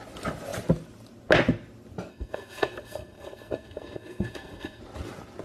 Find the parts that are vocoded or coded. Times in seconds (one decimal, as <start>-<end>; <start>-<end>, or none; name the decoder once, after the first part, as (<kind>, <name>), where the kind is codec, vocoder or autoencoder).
2.1-4.8 (codec, SNAC)